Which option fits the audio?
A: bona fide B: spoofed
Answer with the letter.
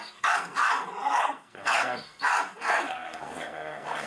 B